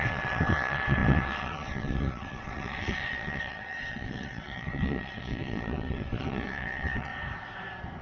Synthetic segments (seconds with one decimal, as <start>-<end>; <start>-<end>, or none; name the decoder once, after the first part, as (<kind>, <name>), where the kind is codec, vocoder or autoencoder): 0.0-7.1 (vocoder, WaveNeXt)